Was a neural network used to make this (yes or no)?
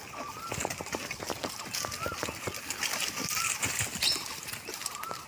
no